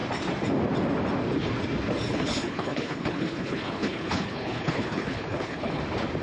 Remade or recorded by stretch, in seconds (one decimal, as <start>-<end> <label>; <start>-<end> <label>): 0.0-2.1 recorded; 2.1-5.8 remade; 5.8-6.2 recorded